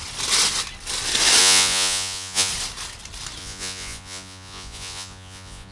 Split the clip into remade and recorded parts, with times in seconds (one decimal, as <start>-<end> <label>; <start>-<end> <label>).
0.0-1.4 recorded; 1.4-2.5 remade; 2.5-3.4 recorded; 3.4-5.7 remade